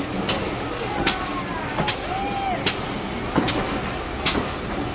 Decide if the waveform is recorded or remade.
recorded